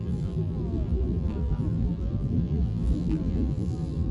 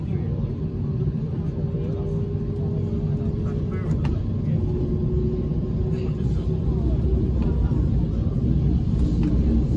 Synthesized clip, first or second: first